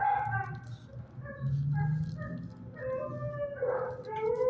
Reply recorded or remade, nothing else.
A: recorded